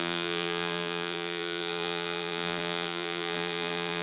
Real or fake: fake